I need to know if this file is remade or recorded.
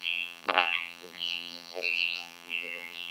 remade